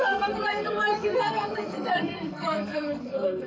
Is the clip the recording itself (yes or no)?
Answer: no